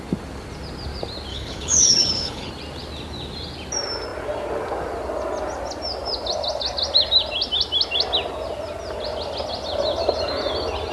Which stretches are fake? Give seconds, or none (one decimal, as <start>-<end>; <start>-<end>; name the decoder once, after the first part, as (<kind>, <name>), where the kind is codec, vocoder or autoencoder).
1.3-2.5 (codec, HILCodec)